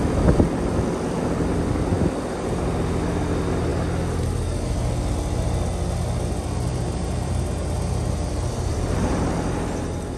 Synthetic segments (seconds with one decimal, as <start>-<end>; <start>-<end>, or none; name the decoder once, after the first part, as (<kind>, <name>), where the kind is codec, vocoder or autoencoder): 6.7-9.3 (vocoder, BigVGAN v2)